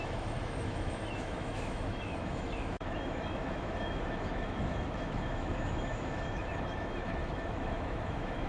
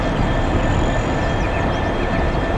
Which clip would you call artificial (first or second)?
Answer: first